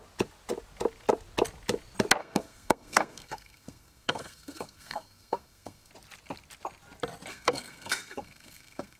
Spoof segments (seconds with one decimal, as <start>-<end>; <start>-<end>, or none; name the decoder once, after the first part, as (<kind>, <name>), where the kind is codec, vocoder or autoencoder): 2.2-5.9 (codec, SNAC); 7.3-9.0